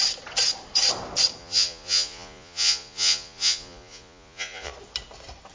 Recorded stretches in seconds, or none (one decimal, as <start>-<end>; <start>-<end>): 0.0-1.4; 4.7-5.5

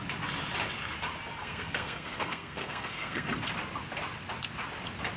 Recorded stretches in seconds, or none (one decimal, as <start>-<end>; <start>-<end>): 0.0-1.4; 3.3-5.2

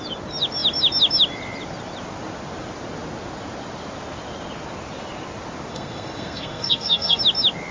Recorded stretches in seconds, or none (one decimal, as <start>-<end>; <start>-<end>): 0.0-5.7; 7.2-7.7

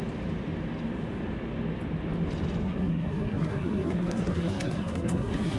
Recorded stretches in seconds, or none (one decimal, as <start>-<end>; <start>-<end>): 0.0-2.6